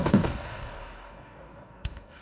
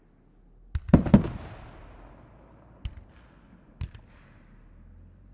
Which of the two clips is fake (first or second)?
first